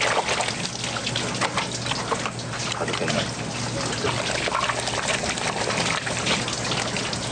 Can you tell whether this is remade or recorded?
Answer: recorded